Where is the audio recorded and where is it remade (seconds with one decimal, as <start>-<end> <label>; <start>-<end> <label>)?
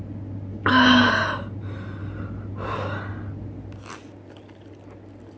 0.0-0.5 recorded; 0.5-1.1 remade; 1.1-5.4 recorded